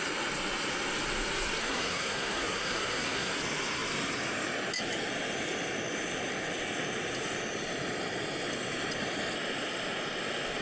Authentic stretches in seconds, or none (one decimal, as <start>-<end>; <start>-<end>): 0.0-1.6; 3.3-10.6